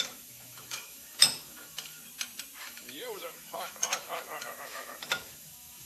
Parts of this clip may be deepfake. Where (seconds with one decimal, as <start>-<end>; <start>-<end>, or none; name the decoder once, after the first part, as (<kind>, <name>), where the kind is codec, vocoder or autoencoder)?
0.0-2.0 (autoencoder, DAC-VAE); 2.6-5.9